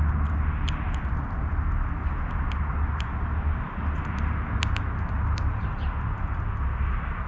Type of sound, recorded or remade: recorded